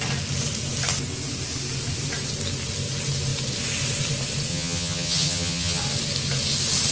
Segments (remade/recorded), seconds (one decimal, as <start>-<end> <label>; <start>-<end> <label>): 0.0-4.5 recorded; 4.5-5.8 remade; 5.8-6.9 recorded